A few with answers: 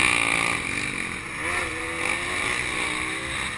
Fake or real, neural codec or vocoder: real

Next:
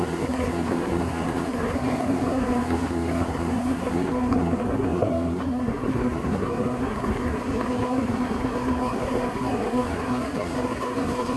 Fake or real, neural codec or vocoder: fake, codec, SNAC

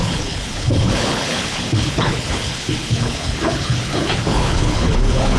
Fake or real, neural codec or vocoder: fake, codec, HILCodec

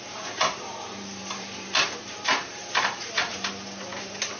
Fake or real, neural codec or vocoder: fake, vocoder, BigVGAN v2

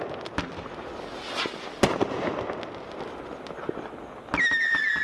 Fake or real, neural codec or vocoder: real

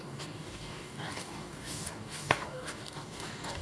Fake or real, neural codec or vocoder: fake, codec, DAC